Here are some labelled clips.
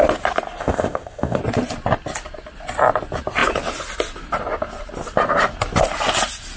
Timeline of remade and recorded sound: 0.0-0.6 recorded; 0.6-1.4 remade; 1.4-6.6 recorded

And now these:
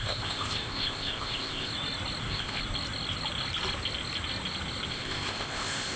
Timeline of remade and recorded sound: 0.0-1.7 remade; 1.7-2.2 recorded; 2.2-2.6 remade; 2.6-4.9 recorded; 4.9-6.0 remade

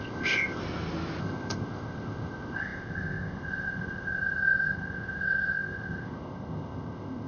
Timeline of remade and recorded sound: 0.0-0.6 remade; 0.6-1.2 recorded; 1.2-7.3 remade

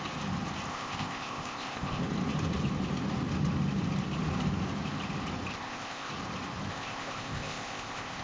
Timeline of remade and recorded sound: 0.0-0.7 recorded; 0.7-2.0 remade; 2.0-5.5 recorded; 5.5-6.1 remade; 6.1-6.7 recorded; 6.7-8.2 remade

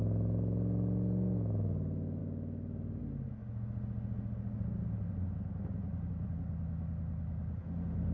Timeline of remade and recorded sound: 0.0-8.1 recorded

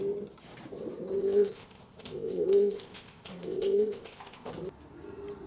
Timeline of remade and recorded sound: 0.0-1.2 recorded; 1.2-4.5 remade; 4.5-5.5 recorded